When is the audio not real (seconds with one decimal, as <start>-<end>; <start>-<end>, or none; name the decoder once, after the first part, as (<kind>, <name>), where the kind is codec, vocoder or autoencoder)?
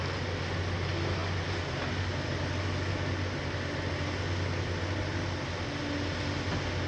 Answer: none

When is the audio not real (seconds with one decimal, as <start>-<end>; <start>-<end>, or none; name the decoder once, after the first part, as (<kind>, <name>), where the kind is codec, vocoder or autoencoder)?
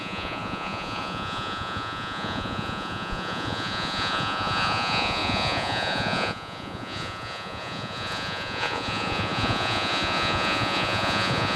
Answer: 0.0-11.6 (vocoder, Vocos)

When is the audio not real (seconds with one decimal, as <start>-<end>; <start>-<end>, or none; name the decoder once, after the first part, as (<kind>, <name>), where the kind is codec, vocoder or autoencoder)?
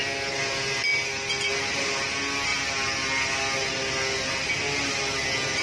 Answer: none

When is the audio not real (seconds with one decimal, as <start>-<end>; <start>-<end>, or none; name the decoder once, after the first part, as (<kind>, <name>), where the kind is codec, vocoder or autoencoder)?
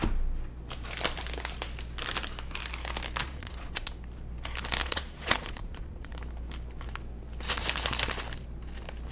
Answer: 3.2-3.9 (vocoder, Vocos); 4.8-6.1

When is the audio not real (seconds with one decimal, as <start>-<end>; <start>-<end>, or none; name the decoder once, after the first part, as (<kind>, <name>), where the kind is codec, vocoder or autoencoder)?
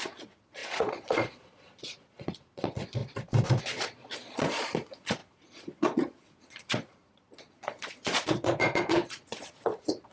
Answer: 0.0-3.0 (vocoder, Vocos); 3.6-10.1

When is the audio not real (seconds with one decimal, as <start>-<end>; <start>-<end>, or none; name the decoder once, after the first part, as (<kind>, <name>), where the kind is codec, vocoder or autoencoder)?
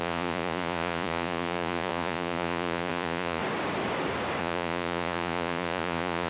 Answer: 0.0-3.4 (vocoder, Vocos); 4.4-6.3